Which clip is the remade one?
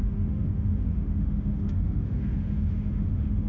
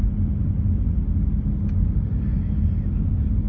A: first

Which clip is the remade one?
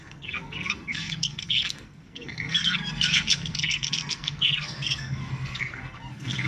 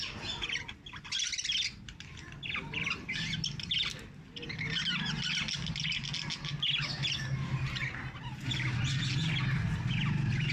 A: first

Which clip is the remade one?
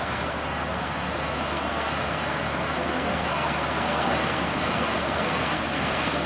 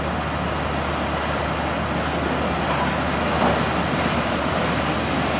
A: first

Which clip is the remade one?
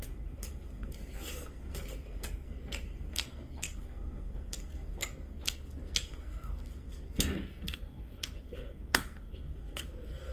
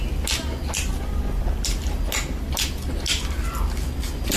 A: first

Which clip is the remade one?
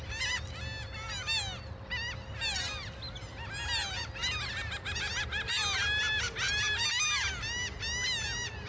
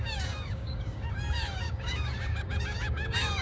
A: second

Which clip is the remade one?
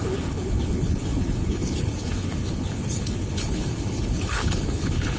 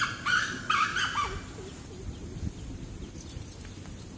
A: first